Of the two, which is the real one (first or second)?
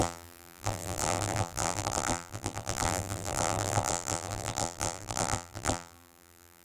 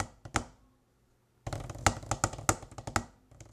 second